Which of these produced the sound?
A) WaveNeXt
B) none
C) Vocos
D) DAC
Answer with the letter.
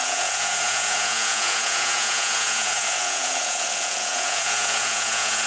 C